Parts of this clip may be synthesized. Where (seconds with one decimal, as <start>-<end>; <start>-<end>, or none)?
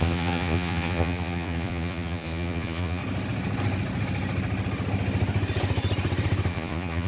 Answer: 0.0-3.0; 6.5-7.1